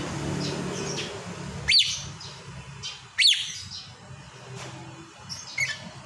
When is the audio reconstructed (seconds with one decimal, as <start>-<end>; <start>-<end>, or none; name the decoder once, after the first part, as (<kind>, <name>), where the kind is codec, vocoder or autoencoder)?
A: 2.0-6.1 (vocoder, BigVGAN v2)